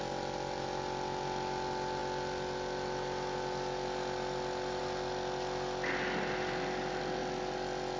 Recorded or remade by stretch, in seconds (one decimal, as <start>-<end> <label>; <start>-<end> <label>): 0.0-8.0 recorded